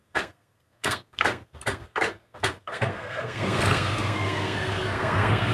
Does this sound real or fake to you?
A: fake